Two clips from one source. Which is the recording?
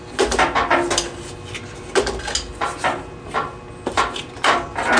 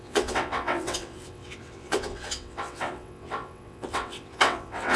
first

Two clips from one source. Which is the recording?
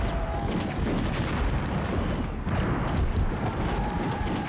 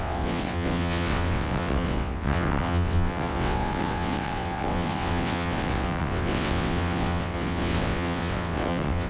first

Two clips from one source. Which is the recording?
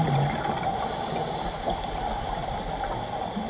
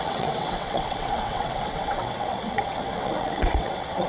first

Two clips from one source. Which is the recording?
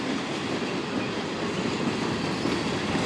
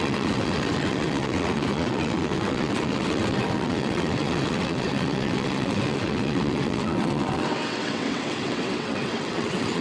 first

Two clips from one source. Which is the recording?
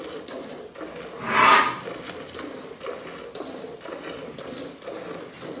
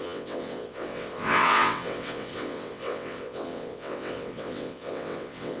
first